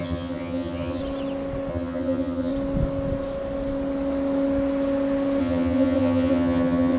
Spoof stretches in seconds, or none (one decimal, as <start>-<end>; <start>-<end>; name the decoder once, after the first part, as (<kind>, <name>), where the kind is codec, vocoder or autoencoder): 0.0-1.0 (vocoder, HiFi-GAN); 1.7-2.5; 5.4-7.0